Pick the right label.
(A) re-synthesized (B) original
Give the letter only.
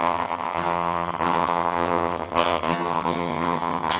A